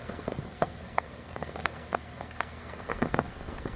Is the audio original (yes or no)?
no